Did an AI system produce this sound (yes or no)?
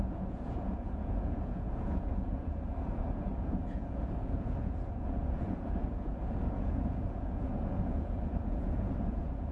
yes